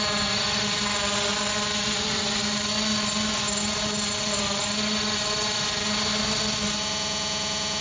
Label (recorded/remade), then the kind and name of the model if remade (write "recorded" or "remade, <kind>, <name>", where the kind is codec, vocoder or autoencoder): recorded